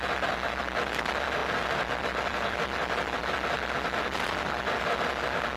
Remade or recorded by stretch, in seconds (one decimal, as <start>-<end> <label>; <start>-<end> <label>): 0.0-5.6 recorded